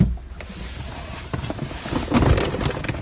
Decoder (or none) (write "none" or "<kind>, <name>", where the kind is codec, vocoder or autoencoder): none